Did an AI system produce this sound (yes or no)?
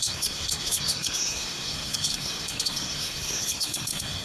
yes